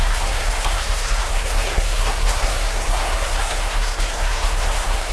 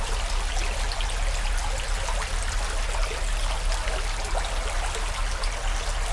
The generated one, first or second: first